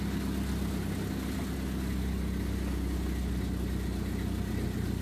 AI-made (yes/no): no